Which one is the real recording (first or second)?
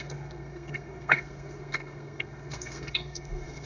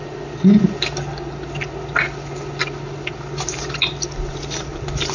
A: second